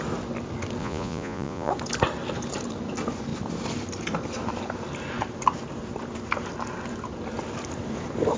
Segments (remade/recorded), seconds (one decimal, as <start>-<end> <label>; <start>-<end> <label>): 0.0-0.8 recorded; 0.8-1.7 remade; 1.7-8.4 recorded